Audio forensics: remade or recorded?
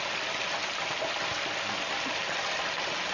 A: recorded